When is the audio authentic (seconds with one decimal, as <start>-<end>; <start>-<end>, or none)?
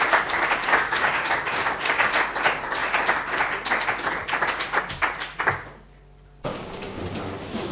0.0-0.6; 2.1-6.5; 7.0-7.7